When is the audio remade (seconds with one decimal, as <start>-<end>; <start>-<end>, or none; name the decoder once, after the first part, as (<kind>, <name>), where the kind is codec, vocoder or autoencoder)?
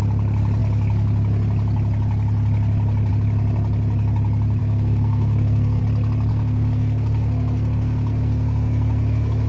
4.6-5.8 (codec, SNAC); 6.3-9.5